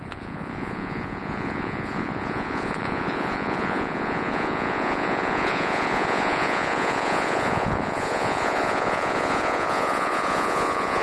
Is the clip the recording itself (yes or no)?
no